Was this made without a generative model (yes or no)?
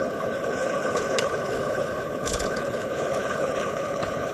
no